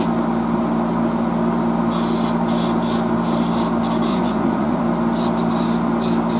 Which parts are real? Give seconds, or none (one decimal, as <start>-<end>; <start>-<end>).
0.0-4.1; 4.8-6.4

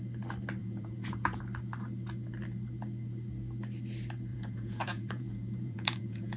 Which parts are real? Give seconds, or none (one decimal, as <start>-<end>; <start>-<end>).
0.0-0.6; 1.4-4.3

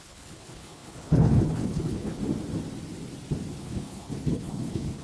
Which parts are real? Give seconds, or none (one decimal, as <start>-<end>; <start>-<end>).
2.2-3.6

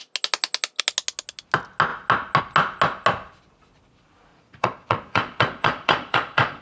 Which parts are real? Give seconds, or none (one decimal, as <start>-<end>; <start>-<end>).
0.0-4.3

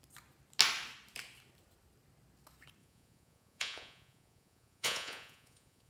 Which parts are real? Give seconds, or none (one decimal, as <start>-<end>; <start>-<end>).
0.0-2.8

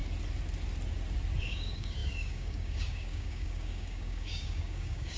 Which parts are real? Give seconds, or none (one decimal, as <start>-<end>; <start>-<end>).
0.0-1.4

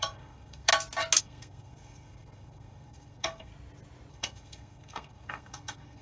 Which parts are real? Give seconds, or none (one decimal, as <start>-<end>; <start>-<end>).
0.7-1.2; 3.5-4.1